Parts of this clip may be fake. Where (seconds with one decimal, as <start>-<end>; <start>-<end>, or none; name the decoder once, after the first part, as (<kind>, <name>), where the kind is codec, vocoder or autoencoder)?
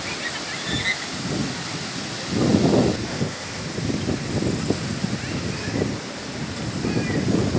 3.1-3.6 (codec, ZipCodec)